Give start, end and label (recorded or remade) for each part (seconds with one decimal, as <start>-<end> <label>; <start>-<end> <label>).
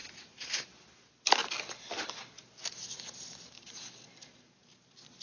0.0-0.6 remade; 0.6-5.2 recorded